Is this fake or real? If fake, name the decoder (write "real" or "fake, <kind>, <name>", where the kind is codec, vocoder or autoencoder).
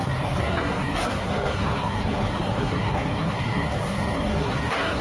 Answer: fake, codec, SNAC